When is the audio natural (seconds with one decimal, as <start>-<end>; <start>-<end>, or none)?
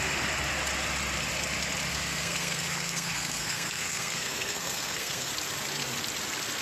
0.0-1.9; 5.3-6.6